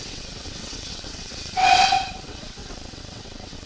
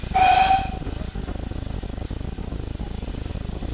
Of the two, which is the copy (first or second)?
first